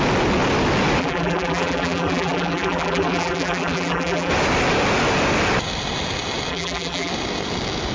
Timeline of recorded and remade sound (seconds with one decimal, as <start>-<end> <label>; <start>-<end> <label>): 0.0-1.0 recorded; 1.0-4.3 remade; 4.3-6.5 recorded; 6.5-7.1 remade; 7.1-7.9 recorded